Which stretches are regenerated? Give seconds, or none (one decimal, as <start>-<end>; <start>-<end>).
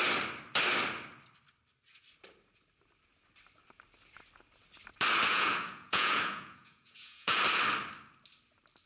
5.3-7.4